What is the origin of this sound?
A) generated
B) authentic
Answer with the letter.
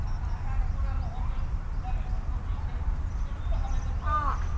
B